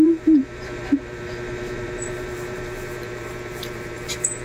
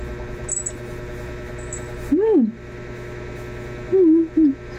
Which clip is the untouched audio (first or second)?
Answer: second